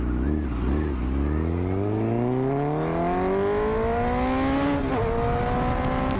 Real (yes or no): yes